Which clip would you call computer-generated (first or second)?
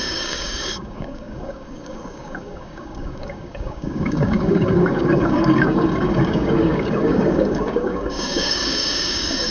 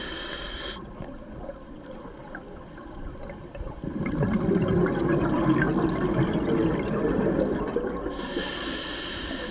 first